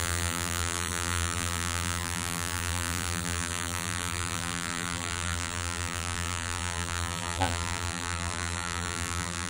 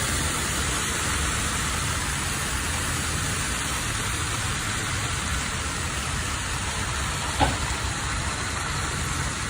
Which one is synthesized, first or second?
first